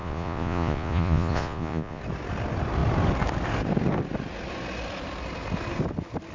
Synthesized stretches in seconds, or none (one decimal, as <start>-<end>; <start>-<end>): 0.0-2.0